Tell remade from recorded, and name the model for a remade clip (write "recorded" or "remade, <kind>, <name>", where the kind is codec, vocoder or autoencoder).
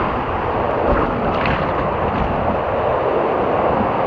recorded